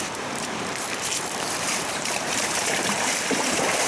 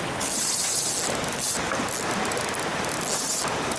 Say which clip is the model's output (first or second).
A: first